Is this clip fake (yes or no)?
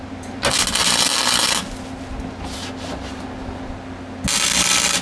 no